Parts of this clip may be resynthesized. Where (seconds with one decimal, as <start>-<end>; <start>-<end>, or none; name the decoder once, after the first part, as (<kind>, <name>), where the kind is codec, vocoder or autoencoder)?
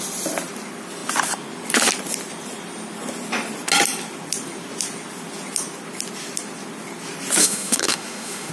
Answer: 7.4-8.5 (autoencoder, DAC-VAE)